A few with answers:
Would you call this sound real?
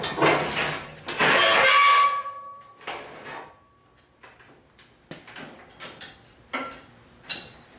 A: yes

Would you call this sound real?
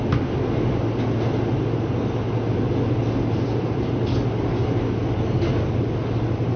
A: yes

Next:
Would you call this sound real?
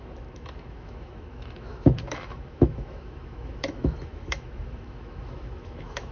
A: no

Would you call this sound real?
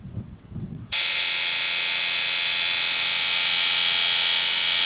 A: no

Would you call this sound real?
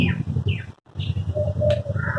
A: yes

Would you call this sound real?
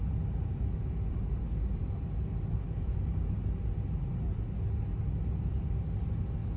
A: yes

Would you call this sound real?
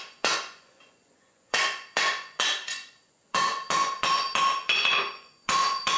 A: no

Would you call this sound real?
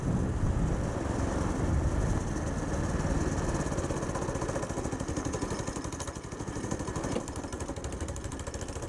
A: yes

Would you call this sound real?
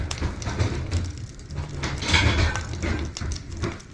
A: yes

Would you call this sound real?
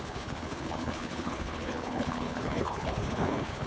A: no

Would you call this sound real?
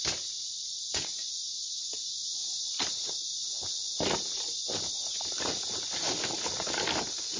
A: yes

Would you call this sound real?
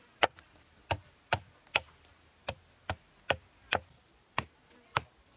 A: yes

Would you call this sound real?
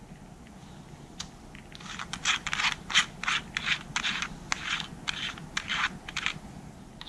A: yes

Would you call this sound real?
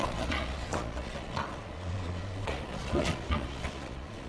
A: no